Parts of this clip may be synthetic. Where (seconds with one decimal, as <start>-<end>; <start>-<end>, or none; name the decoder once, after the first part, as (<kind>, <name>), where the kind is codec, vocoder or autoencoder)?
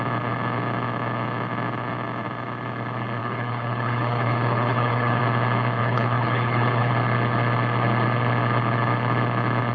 3.2-5.2 (codec, HILCodec); 5.8-6.9